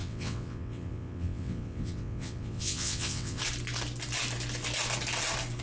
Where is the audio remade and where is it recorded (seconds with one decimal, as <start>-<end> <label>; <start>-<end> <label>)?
0.0-3.4 remade; 3.4-5.6 recorded